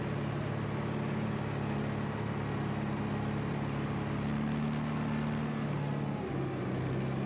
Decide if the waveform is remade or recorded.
recorded